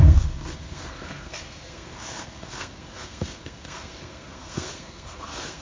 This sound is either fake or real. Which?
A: fake